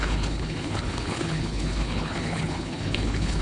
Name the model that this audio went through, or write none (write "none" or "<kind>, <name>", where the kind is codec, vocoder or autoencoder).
codec, HILCodec